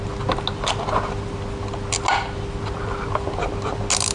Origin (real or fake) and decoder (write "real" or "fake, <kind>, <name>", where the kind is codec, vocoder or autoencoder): real